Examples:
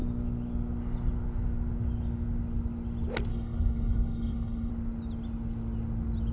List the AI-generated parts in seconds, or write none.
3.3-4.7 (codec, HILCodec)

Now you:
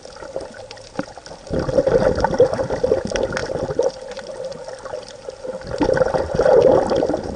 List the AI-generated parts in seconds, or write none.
none

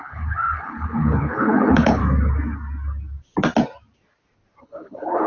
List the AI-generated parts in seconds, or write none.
0.0-2.0 (codec, HILCodec); 4.6-5.3

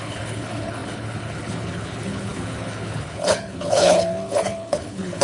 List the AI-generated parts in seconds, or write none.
0.0-5.2 (codec, HILCodec)

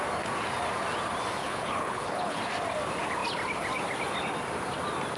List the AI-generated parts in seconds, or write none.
1.4-2.4 (codec, HILCodec)

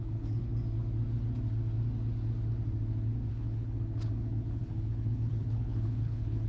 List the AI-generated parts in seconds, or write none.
0.0-0.4 (codec, HILCodec); 3.3-6.5

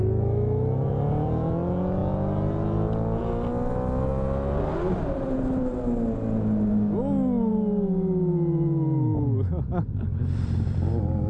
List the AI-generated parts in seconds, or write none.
none

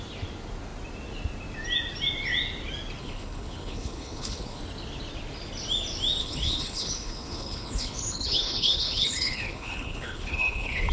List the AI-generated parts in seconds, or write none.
3.0-4.6 (codec, HILCodec); 6.2-10.9